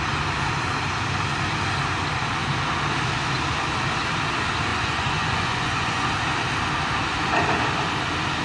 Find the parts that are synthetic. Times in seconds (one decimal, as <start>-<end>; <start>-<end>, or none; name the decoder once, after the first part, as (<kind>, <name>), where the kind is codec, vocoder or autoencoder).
4.7-6.1 (vocoder, Vocos)